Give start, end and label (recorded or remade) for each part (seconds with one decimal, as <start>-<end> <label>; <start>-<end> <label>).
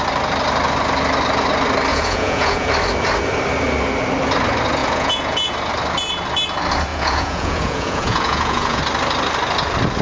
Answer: 0.0-1.9 recorded; 1.9-2.7 remade; 2.7-4.8 recorded; 4.8-5.5 remade; 5.5-6.9 recorded; 6.9-8.8 remade; 8.8-10.0 recorded